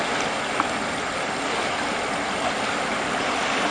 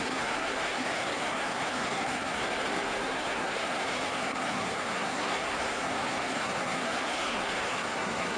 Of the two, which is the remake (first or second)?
second